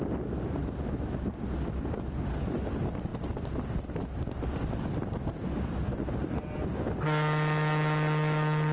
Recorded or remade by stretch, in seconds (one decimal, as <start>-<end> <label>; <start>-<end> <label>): 0.0-8.7 recorded